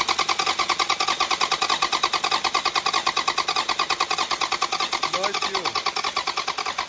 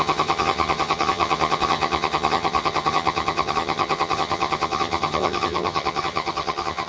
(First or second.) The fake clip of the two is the second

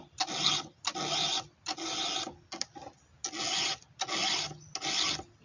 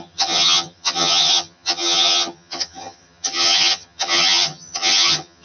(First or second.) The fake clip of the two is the second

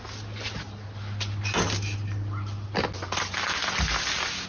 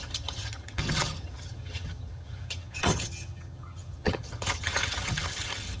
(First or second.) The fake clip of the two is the second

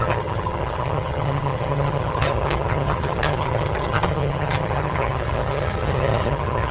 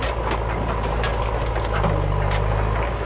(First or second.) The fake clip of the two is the first